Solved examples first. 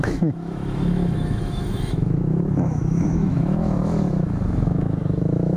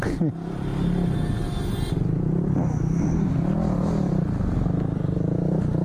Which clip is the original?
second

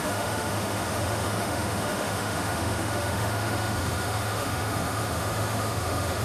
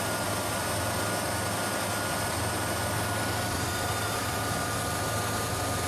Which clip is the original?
second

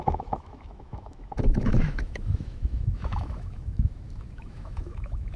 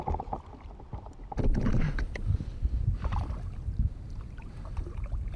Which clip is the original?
second